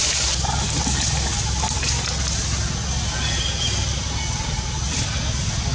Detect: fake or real real